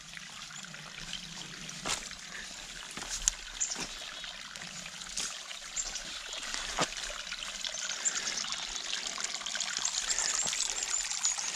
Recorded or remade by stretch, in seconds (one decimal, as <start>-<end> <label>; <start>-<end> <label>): 0.0-5.5 recorded; 5.5-6.7 remade; 6.7-11.6 recorded